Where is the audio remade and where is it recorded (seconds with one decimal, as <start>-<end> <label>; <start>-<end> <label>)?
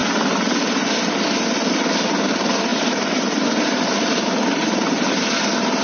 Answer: 0.0-5.8 recorded